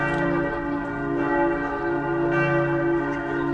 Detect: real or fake real